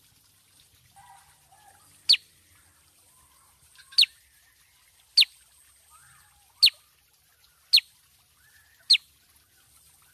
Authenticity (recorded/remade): recorded